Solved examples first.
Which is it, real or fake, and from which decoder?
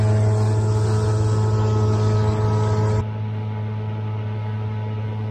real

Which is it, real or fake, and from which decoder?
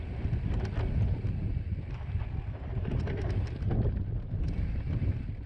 real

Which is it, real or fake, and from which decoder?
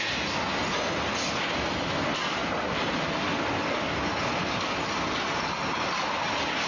real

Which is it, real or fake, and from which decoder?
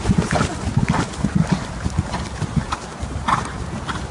real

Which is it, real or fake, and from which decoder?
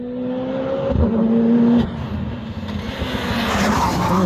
real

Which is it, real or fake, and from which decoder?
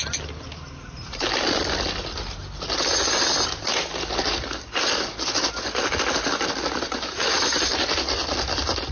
real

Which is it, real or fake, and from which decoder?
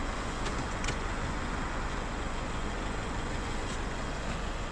fake, vocoder, Vocos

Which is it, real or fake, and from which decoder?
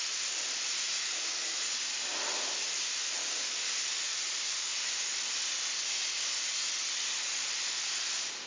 real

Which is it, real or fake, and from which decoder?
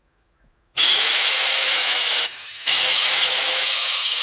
fake, autoencoder, DAC-VAE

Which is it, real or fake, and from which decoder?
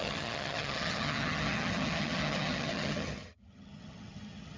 fake, vocoder, HiFi-GAN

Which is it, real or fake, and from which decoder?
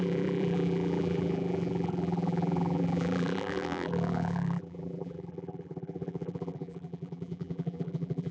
fake, vocoder, BigVGAN v2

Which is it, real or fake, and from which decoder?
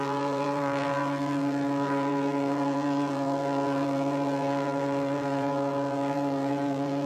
fake, vocoder, BigVGAN v2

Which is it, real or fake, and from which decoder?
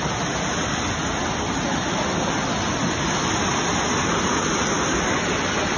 real